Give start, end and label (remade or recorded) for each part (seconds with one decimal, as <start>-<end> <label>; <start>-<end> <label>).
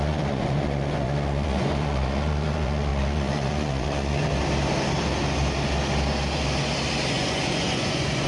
0.0-4.3 remade; 4.3-7.1 recorded; 7.1-8.3 remade